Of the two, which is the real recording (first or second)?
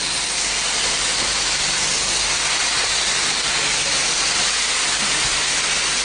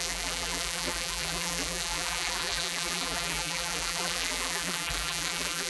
first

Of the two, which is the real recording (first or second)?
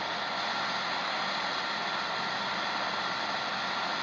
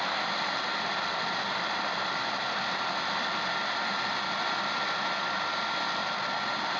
first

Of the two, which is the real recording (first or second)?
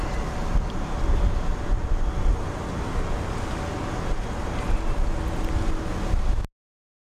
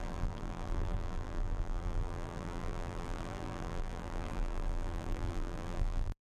first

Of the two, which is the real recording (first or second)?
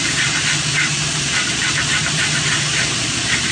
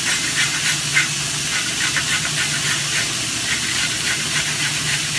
second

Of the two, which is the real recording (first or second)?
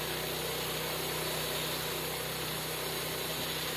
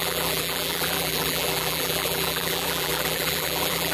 first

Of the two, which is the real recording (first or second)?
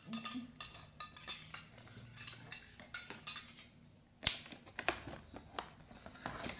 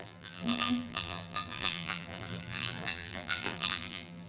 first